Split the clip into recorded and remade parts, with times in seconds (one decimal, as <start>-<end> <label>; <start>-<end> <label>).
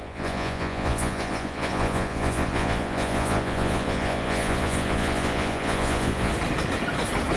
0.0-6.3 remade; 6.3-7.4 recorded